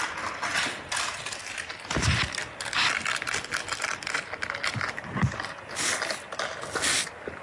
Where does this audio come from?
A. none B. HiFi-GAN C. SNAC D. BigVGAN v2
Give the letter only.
A